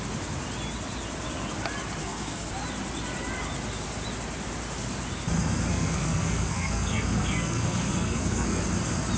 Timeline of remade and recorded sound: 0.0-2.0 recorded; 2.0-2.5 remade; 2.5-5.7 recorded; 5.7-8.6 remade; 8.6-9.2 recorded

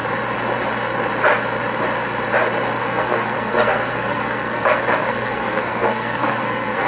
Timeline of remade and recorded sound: 0.0-2.8 recorded; 2.8-6.9 remade